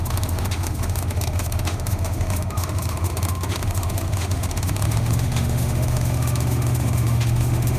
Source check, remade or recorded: remade